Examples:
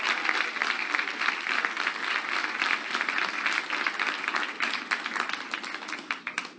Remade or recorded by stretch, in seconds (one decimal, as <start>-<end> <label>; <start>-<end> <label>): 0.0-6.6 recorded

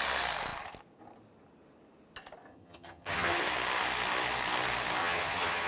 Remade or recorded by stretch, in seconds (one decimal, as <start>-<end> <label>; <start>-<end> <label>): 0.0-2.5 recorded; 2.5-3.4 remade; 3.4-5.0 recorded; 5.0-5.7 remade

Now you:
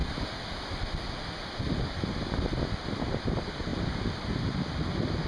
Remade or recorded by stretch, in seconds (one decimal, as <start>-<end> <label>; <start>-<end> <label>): 0.0-5.3 recorded

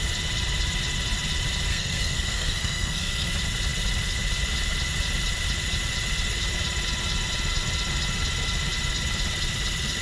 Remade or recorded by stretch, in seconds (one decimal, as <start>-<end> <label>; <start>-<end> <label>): 0.0-1.7 recorded; 1.7-3.3 remade; 3.3-10.0 recorded

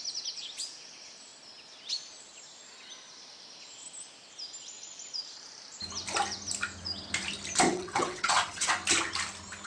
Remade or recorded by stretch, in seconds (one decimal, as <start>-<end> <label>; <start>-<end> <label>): 0.0-7.7 recorded; 7.7-8.7 remade; 8.7-9.7 recorded

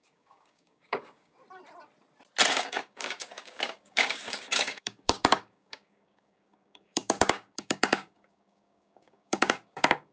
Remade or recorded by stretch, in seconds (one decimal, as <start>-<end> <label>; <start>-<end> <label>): 0.0-1.4 remade; 1.4-2.5 recorded; 2.5-10.1 remade